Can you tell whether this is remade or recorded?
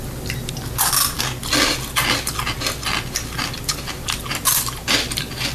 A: recorded